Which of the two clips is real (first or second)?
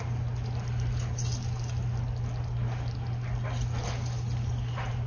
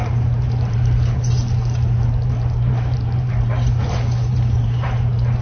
first